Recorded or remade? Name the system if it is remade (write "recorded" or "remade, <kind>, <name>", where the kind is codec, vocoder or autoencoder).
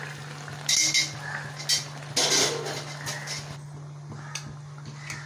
recorded